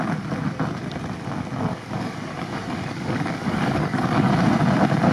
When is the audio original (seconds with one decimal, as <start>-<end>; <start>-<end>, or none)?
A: 0.0-1.7; 4.3-5.1